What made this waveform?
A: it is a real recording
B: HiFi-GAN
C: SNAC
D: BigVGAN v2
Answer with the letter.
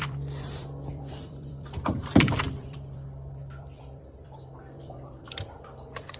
D